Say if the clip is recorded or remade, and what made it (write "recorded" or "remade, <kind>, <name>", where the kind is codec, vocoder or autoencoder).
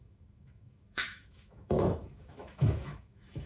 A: remade, autoencoder, DAC-VAE